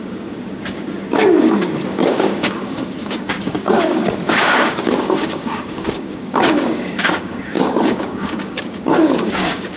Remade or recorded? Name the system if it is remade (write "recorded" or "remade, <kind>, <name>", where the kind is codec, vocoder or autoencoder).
remade, codec, DAC